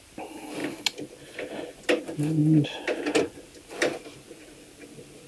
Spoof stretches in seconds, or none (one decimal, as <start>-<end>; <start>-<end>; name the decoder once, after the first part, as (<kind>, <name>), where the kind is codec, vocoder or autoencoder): none